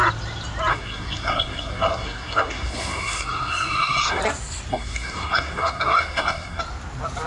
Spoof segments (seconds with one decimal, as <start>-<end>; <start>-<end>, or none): 0.7-4.2; 4.7-6.6